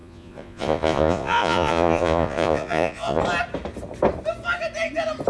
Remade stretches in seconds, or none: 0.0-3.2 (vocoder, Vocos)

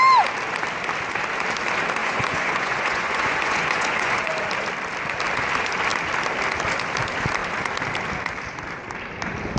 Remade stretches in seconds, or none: 2.0-4.3 (vocoder, Vocos)

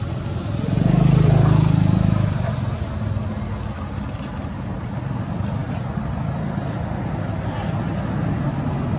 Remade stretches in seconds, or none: none

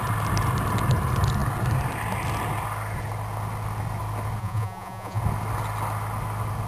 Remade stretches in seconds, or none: 4.4-5.2 (vocoder, Vocos)